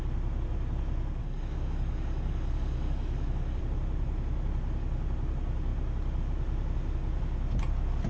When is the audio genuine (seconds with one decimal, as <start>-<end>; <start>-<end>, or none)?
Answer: 0.0-1.2; 3.6-8.1